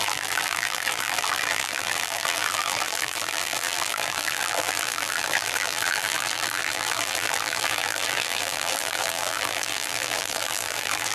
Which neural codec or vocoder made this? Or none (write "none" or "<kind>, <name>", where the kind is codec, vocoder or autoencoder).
vocoder, BigVGAN v2